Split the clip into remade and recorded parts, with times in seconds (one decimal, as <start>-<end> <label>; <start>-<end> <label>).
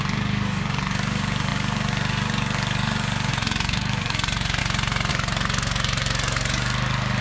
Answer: 0.0-4.6 remade; 4.6-5.1 recorded; 5.1-7.2 remade